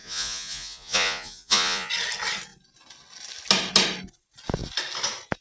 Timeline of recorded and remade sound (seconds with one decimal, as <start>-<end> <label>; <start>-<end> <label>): 0.0-1.9 remade; 1.9-5.4 recorded